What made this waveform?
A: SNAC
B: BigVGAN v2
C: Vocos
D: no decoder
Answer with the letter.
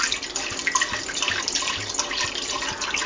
D